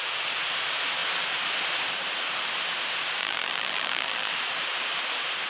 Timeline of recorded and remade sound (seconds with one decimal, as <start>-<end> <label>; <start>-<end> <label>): 0.0-3.2 recorded; 3.2-4.3 remade; 4.3-5.5 recorded